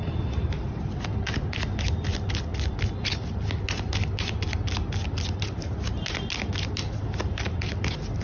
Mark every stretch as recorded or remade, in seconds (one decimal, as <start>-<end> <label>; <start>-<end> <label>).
0.0-8.2 recorded